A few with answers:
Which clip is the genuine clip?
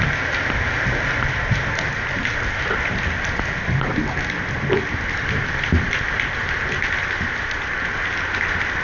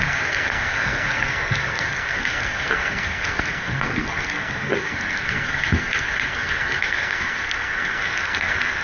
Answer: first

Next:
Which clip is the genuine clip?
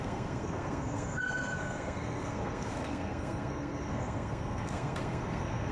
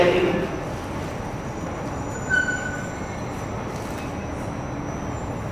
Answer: second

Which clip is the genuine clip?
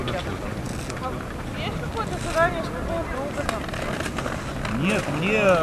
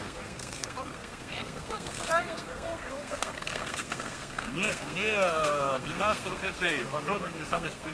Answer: first